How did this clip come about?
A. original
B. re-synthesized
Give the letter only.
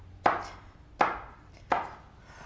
A